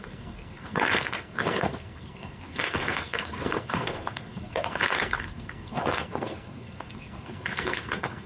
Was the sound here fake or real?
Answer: fake